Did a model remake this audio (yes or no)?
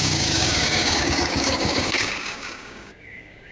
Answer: yes